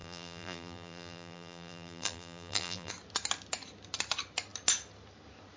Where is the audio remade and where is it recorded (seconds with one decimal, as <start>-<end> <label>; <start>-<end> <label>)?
0.0-2.9 remade; 2.9-5.6 recorded